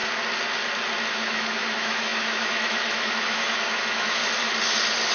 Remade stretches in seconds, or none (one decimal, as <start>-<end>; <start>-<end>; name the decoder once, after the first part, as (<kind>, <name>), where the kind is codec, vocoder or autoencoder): 1.1-4.2 (autoencoder, DAC-VAE)